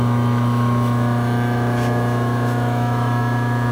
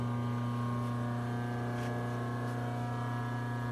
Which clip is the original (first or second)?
second